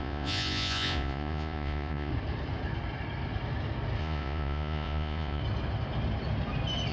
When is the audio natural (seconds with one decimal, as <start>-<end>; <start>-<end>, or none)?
2.1-4.0; 5.4-6.9